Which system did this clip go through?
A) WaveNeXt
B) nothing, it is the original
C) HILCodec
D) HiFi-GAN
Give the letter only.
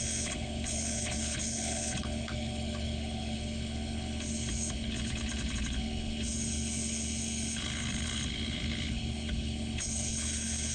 C